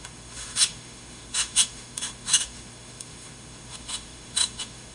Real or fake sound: fake